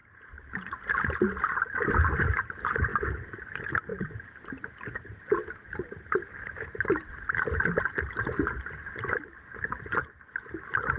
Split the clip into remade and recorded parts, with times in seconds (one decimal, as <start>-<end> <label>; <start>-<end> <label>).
0.0-3.9 recorded; 3.9-8.7 remade; 8.7-11.0 recorded